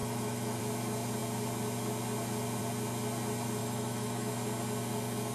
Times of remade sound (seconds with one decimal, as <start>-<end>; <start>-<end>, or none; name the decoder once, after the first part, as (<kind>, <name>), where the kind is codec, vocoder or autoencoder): 0.0-0.6 (autoencoder, DAC-VAE); 3.6-4.3